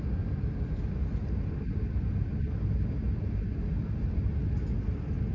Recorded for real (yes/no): yes